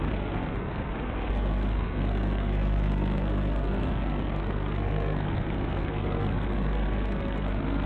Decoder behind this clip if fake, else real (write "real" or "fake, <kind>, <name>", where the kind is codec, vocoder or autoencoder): fake, codec, SNAC